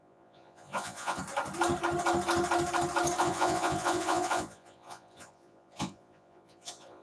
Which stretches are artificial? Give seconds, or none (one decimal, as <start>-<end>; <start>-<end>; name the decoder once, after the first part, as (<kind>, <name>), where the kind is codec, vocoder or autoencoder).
0.0-1.2 (vocoder, Vocos); 3.2-7.0